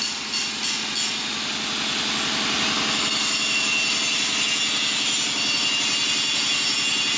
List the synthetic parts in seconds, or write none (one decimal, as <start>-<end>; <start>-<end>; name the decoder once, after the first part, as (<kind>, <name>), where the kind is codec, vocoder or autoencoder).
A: none